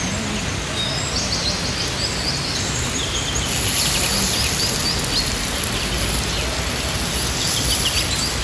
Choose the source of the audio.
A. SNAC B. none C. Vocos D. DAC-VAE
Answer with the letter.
B